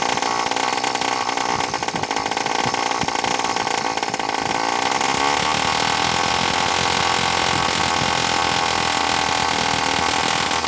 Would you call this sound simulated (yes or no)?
no